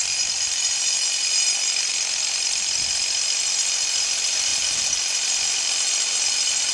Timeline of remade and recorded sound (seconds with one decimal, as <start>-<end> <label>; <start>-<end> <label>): 0.0-6.7 recorded